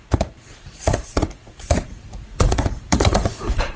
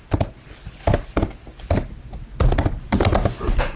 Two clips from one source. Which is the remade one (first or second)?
first